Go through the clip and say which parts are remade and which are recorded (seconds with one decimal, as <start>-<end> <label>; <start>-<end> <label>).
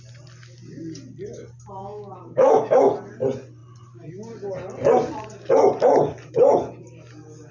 0.0-1.8 recorded; 1.8-2.9 remade; 2.9-7.5 recorded